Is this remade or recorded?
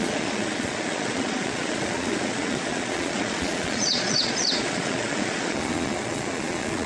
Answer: remade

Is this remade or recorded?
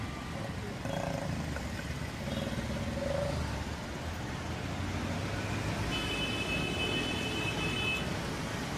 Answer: recorded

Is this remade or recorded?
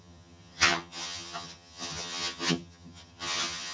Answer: remade